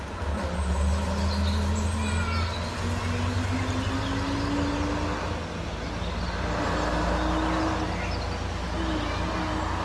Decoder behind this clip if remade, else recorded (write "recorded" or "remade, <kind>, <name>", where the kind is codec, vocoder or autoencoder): recorded